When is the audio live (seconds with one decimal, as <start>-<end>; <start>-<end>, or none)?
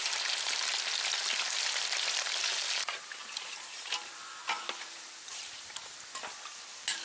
0.7-2.5; 5.7-7.0